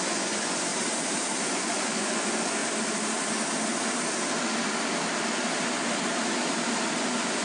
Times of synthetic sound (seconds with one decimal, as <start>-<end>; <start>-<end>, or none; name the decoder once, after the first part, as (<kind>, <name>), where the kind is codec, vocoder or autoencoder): 0.0-0.7 (vocoder, Vocos); 1.4-2.6; 7.0-7.4